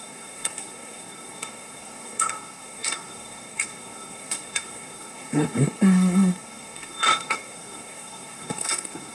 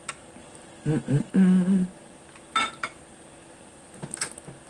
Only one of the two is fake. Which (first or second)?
first